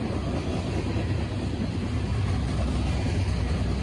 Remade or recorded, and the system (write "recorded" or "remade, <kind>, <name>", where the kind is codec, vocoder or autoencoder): recorded